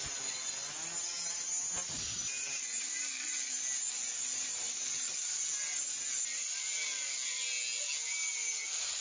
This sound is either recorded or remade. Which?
recorded